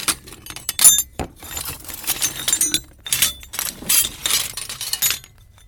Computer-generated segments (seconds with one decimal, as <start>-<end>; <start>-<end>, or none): 1.1-2.2